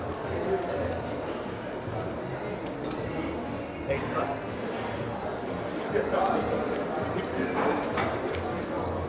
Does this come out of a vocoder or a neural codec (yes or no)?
no